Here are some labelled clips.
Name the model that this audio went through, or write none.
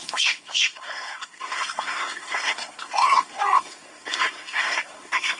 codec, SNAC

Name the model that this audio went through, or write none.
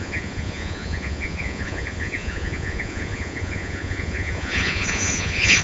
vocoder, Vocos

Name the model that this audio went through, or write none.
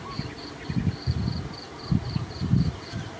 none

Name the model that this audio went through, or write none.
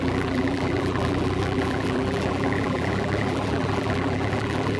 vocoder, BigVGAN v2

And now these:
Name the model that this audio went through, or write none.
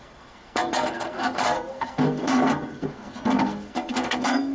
codec, SNAC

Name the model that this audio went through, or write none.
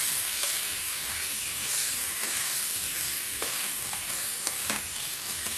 codec, DAC